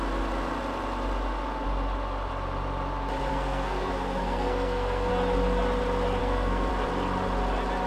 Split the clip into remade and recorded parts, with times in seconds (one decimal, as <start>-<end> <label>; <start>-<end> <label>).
0.0-3.3 recorded; 3.3-5.1 remade; 5.1-6.2 recorded; 6.2-6.7 remade; 6.7-7.9 recorded